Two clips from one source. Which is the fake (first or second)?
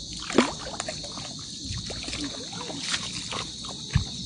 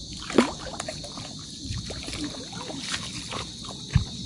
second